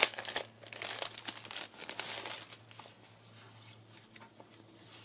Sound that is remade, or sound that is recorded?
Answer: recorded